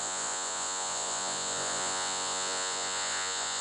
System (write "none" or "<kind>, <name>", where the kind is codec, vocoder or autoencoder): vocoder, Vocos